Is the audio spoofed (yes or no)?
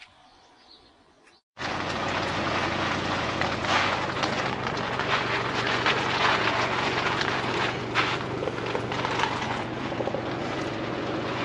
yes